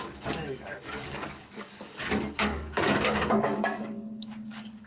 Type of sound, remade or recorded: remade